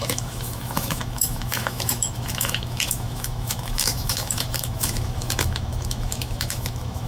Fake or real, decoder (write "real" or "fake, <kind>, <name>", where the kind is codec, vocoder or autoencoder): fake, autoencoder, DAC-VAE